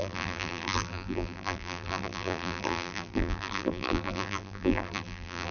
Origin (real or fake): fake